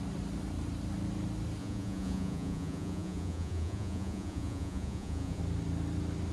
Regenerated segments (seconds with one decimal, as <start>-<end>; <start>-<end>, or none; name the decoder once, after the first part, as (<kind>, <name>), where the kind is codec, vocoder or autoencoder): 1.6-5.4 (vocoder, Vocos)